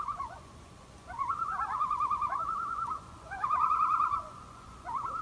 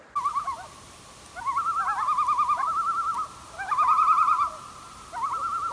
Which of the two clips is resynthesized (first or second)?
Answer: first